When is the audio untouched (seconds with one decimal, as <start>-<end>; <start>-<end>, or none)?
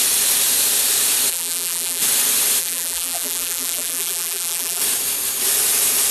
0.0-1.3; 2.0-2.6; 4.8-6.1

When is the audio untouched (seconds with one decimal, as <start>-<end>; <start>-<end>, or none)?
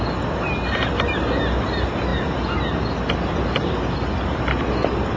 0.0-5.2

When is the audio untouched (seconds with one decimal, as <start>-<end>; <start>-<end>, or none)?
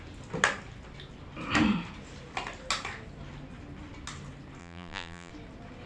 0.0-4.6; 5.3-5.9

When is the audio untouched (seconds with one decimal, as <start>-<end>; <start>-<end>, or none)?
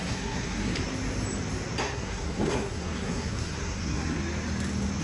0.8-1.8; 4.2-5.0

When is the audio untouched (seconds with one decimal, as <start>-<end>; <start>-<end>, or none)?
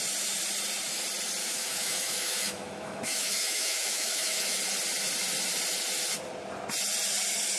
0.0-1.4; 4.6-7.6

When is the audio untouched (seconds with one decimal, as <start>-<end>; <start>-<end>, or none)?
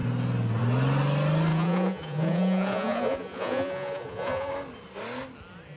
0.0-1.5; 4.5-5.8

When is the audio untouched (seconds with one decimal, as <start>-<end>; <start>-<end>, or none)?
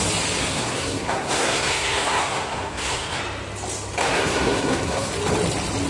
0.0-0.4; 3.2-4.0; 5.1-5.9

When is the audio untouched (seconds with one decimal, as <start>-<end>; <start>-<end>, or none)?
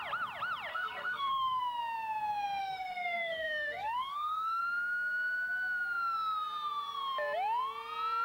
0.0-0.7; 1.6-2.6; 4.6-8.2